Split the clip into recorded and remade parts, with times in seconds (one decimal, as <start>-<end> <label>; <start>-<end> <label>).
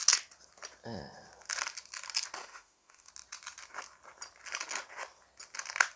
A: 0.0-2.4 recorded; 2.4-3.1 remade; 3.1-6.0 recorded